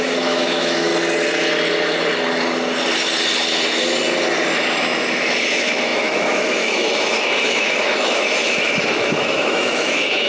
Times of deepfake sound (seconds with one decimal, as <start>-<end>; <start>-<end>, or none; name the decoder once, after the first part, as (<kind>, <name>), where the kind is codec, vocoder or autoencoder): 0.0-0.9 (autoencoder, DAC-VAE); 4.8-10.3